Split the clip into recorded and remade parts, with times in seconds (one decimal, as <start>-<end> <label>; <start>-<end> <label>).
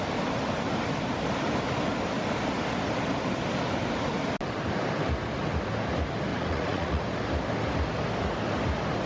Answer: 0.0-6.3 recorded; 6.3-7.0 remade; 7.0-9.1 recorded